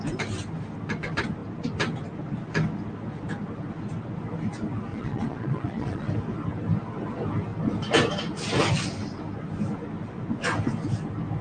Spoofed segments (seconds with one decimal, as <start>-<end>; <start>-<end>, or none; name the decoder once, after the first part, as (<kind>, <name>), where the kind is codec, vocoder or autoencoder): 4.9-6.1 (vocoder, Vocos)